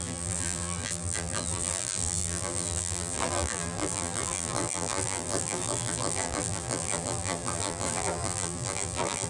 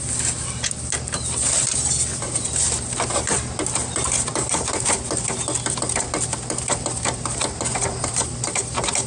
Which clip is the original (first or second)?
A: second